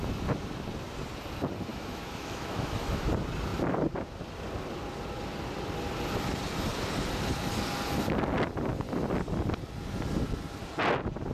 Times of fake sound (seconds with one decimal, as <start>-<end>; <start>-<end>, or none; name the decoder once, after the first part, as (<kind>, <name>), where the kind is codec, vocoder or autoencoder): 1.7-3.1 (autoencoder, DAC-VAE)